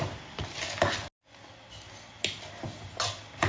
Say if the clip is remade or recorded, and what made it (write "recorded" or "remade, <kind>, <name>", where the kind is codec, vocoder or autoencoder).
recorded